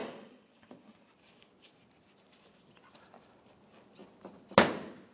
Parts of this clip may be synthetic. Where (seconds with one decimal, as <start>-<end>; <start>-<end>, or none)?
0.0-1.1